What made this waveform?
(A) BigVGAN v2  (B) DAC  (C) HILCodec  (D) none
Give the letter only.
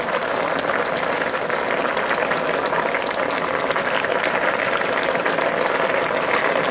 D